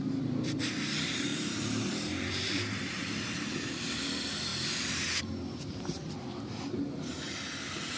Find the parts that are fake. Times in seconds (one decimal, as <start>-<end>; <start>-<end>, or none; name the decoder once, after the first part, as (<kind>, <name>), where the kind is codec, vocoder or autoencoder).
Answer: 0.0-1.3 (vocoder, BigVGAN v2); 1.9-8.0